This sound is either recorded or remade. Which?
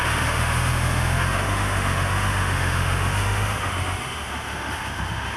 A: remade